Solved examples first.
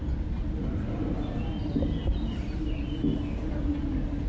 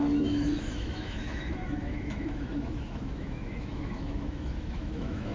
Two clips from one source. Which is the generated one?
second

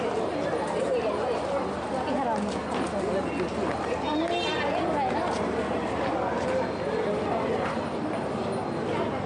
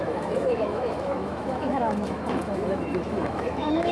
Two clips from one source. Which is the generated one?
second